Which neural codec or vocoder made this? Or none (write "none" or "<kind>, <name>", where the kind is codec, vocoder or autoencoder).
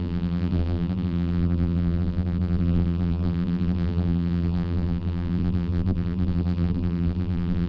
vocoder, BigVGAN v2